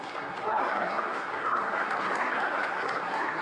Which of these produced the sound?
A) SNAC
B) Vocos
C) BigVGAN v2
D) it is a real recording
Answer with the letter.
A